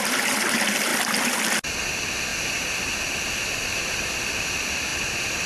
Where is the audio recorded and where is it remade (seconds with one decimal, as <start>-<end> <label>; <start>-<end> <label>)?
0.0-2.3 recorded; 2.3-4.3 remade; 4.3-5.5 recorded